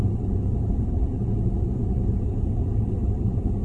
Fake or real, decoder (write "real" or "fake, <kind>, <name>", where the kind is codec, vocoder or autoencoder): fake, vocoder, BigVGAN v2